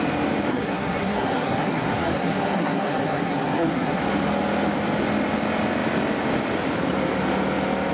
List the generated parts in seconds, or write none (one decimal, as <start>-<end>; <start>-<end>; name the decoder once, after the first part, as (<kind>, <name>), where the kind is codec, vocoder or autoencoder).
0.5-4.0 (codec, SNAC)